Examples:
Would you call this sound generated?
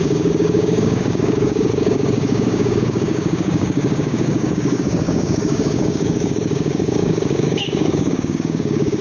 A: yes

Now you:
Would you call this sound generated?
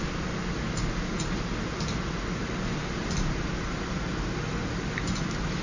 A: no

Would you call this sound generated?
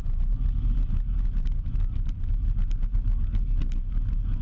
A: no